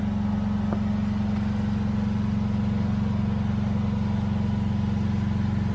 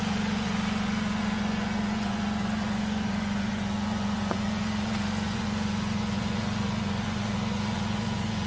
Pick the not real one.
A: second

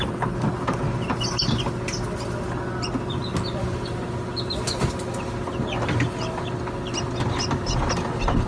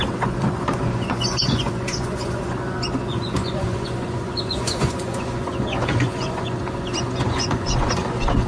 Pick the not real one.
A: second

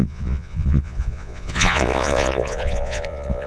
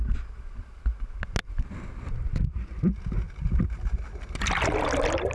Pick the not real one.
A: first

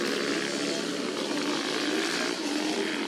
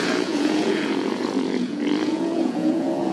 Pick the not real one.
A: second